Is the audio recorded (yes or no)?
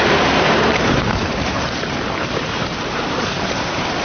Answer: no